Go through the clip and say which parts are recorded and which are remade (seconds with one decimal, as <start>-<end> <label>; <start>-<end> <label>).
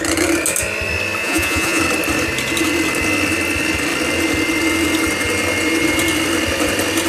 0.0-1.2 recorded; 1.2-1.8 remade; 1.8-7.1 recorded